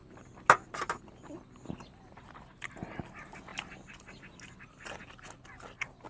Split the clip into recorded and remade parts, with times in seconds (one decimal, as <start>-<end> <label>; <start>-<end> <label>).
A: 0.0-6.1 recorded